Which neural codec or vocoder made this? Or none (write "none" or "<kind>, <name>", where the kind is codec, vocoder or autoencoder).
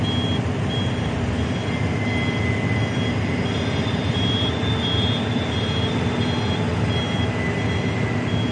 none